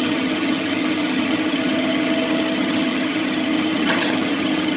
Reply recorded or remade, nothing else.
remade